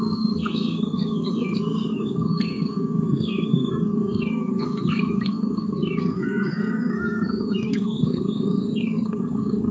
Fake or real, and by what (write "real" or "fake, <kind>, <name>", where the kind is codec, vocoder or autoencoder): fake, codec, SNAC